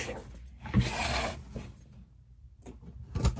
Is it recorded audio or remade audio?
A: recorded